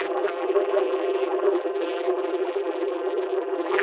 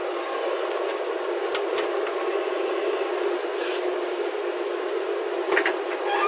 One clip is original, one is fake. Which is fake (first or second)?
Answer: first